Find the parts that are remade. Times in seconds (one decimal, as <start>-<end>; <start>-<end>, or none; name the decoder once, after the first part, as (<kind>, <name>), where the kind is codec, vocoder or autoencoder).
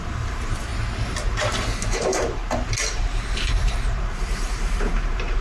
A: 0.0-0.7 (vocoder, BigVGAN v2); 1.9-2.4; 2.9-5.4